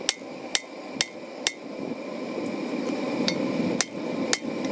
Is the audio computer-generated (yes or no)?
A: no